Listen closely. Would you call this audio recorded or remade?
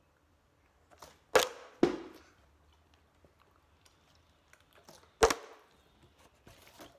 recorded